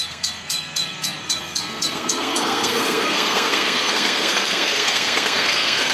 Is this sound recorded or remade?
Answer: remade